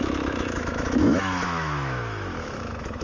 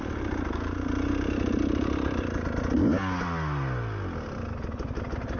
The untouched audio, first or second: second